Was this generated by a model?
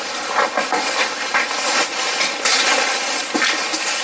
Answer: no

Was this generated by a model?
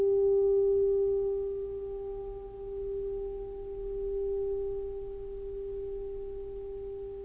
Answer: no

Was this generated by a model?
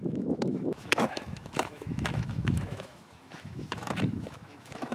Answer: yes